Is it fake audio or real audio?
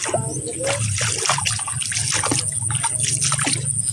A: real